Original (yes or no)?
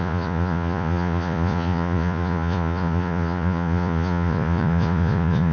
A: no